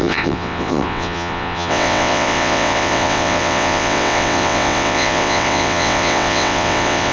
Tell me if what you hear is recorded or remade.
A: remade